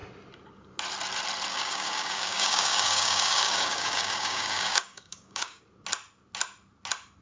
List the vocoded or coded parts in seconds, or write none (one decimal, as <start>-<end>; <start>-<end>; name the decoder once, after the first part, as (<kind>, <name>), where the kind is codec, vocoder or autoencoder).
1.5-5.6 (codec, DAC)

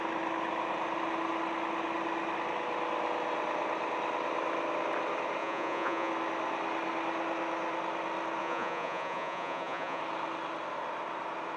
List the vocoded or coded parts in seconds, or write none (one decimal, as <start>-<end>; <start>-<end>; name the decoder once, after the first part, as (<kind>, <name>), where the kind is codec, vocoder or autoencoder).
5.4-6.1 (vocoder, Vocos); 8.4-10.0

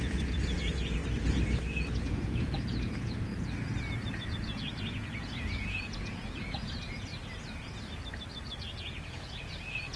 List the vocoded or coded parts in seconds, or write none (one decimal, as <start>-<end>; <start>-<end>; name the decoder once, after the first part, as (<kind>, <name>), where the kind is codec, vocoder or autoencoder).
0.0-1.0 (vocoder, Vocos); 2.0-3.3; 4.3-7.1; 8.7-10.0

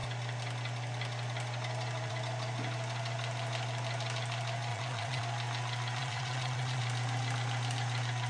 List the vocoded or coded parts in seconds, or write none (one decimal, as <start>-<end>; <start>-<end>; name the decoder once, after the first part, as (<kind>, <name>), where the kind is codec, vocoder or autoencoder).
4.7-5.2 (vocoder, Vocos); 6.0-6.8